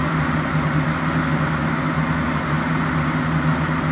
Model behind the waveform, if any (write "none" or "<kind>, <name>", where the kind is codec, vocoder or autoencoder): none